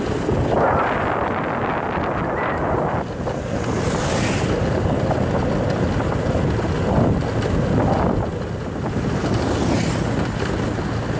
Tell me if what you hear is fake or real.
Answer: real